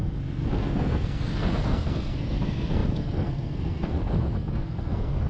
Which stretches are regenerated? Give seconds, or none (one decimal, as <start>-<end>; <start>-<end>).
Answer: 0.0-5.3